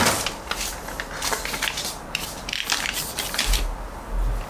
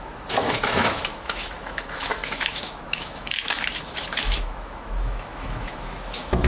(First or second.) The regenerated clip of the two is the second